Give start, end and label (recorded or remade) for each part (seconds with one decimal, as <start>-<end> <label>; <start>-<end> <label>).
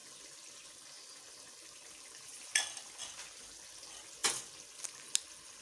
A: 0.0-5.6 recorded